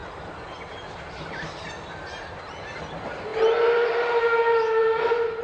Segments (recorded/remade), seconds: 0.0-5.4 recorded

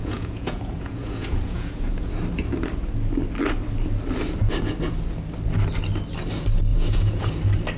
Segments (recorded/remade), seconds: 0.0-2.1 remade; 2.1-6.7 recorded; 6.7-7.3 remade; 7.3-7.8 recorded